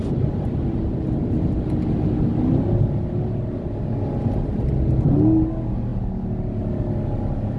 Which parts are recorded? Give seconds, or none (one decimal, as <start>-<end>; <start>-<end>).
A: 0.0-7.6